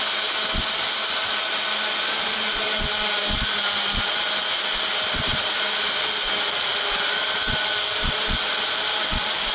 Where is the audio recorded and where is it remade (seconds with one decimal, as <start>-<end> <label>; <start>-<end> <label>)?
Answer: 0.0-9.5 recorded